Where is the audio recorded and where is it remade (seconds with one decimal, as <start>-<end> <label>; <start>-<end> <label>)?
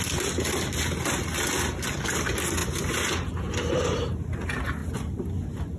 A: 0.0-4.8 recorded; 4.8-5.8 remade